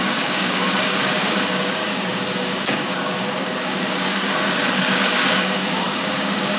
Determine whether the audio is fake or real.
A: fake